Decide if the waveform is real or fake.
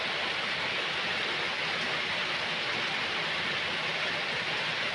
real